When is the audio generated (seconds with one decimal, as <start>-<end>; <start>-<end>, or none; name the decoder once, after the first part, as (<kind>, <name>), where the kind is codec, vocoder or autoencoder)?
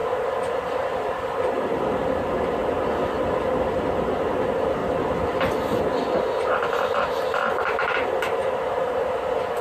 0.0-2.5 (vocoder, BigVGAN v2); 4.8-5.8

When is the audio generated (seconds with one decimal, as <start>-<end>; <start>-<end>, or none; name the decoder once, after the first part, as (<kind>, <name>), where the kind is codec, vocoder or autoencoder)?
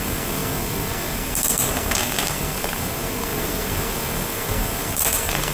0.0-5.5 (codec, SNAC)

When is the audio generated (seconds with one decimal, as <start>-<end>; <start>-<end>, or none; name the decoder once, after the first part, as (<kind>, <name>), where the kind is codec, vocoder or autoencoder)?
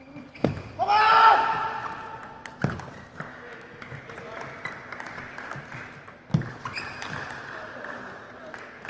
3.3-4.0 (autoencoder, DAC-VAE)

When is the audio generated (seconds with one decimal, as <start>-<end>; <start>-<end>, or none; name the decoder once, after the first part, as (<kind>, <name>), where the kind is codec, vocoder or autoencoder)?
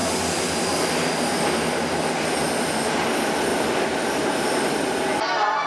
0.0-1.4 (vocoder, BigVGAN v2); 3.5-5.3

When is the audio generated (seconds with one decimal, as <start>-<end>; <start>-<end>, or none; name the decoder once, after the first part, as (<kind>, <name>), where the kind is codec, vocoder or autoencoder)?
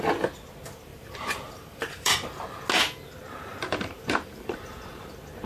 0.9-2.4 (vocoder, BigVGAN v2); 3.5-4.8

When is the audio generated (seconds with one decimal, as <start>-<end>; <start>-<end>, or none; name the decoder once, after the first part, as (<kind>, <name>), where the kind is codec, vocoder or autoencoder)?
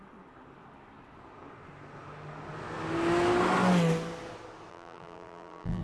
4.7-5.8 (vocoder, BigVGAN v2)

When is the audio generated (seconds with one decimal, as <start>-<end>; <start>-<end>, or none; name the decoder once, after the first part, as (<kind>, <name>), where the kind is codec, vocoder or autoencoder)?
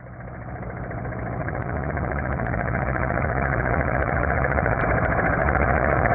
1.4-4.8 (vocoder, Vocos); 5.4-6.1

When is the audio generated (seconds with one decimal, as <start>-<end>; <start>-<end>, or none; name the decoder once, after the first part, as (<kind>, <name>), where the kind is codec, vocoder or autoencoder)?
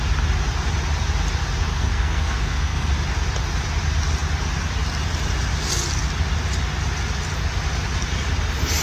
1.7-2.9 (codec, SNAC)